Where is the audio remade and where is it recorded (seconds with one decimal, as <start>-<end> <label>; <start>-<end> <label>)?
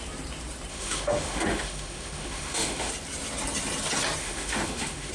0.0-0.7 recorded; 0.7-2.9 remade; 2.9-4.2 recorded; 4.2-5.1 remade